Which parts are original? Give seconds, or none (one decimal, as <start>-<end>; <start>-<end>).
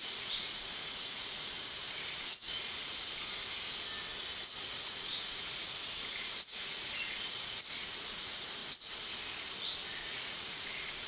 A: 1.5-2.1; 3.4-4.7; 8.6-9.9